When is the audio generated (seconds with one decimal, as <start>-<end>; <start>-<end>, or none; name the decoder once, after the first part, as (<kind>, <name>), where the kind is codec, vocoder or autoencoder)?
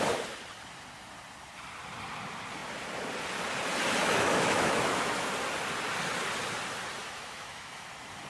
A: 4.0-5.3 (autoencoder, DAC-VAE); 7.0-7.9